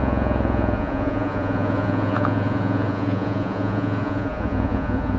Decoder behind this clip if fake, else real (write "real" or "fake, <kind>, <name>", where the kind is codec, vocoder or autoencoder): fake, vocoder, Vocos